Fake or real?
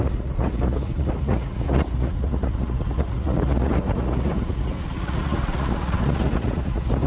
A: fake